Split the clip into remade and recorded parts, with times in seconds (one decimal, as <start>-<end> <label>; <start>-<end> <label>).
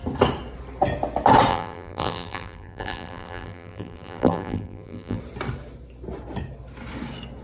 0.0-1.5 recorded; 1.5-5.2 remade; 5.2-7.4 recorded